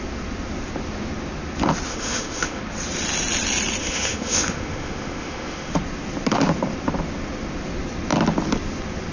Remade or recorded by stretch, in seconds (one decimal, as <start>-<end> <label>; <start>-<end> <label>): 0.0-1.9 recorded; 1.9-2.6 remade; 2.6-3.8 recorded; 3.8-5.7 remade; 5.7-9.1 recorded